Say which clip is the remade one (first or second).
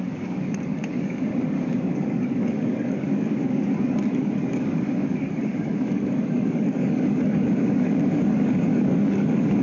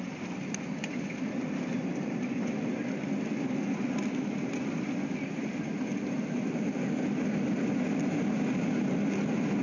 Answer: first